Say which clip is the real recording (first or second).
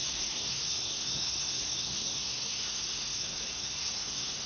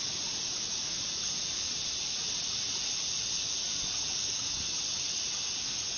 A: second